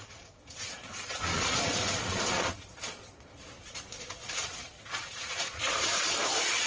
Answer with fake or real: fake